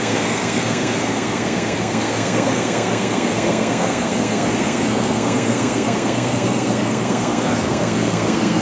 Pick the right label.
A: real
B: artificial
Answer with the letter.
B